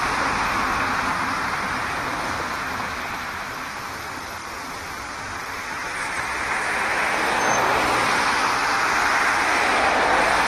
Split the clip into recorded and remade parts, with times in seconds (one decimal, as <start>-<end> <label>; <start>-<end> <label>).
0.0-0.7 remade; 0.7-3.7 recorded; 3.7-10.5 remade